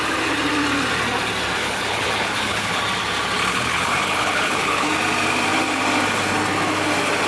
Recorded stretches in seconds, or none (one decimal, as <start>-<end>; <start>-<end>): 0.0-1.6; 2.8-3.5; 4.9-7.3